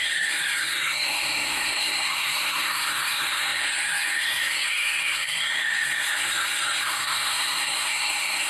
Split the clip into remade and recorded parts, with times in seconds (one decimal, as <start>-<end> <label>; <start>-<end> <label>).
0.0-8.5 remade